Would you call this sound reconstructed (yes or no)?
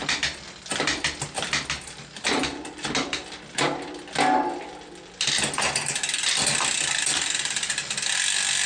no